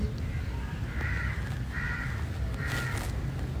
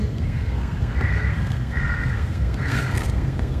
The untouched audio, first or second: first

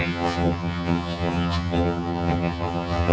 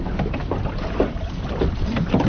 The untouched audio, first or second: second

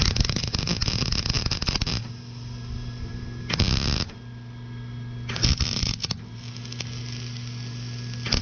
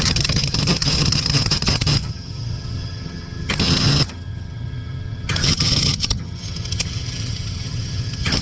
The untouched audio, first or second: first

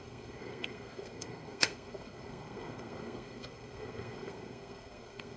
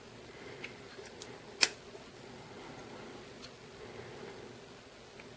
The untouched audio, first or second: second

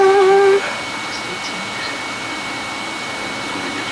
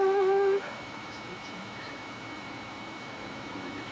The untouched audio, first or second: first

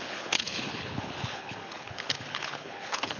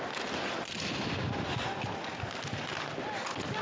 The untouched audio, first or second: second